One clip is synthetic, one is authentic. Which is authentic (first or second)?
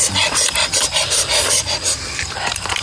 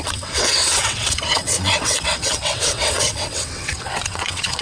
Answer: first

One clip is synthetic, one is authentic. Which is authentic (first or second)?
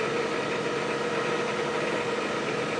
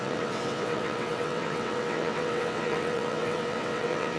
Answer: first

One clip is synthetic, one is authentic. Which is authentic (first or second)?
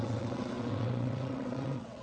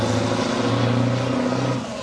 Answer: second